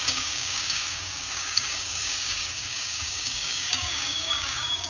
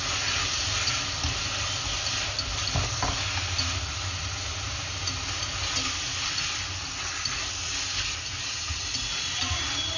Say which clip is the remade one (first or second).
first